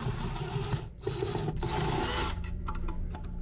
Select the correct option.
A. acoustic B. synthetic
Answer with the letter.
A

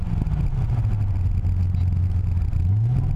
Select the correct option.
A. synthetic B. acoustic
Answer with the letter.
B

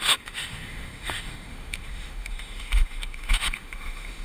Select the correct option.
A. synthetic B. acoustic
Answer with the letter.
A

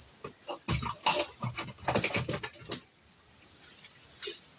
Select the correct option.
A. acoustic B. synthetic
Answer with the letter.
A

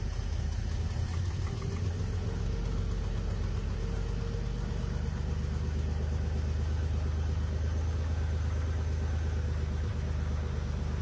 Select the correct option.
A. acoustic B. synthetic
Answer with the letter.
A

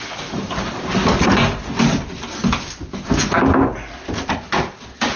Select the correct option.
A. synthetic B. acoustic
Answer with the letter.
B